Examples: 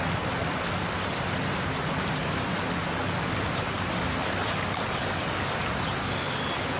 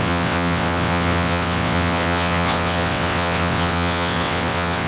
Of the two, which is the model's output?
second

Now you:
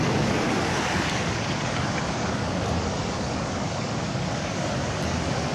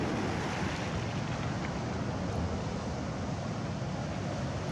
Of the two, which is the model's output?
first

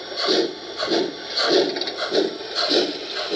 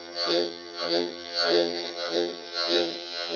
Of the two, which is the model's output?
second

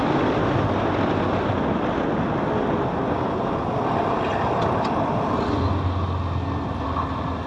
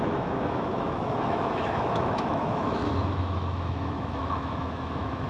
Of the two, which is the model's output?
second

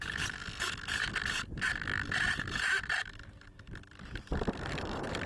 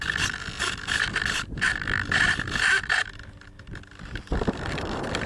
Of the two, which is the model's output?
first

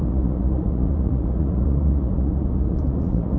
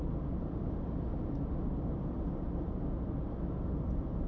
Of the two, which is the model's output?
first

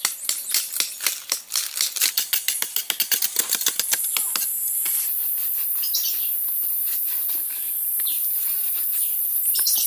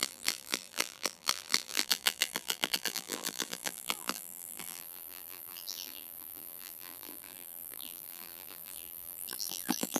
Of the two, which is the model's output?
second